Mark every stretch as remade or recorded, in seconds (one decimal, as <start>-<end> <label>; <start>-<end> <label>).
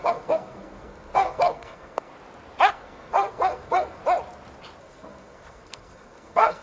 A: 0.0-2.1 remade; 2.1-2.7 recorded; 2.7-4.0 remade; 4.0-4.8 recorded; 4.8-6.6 remade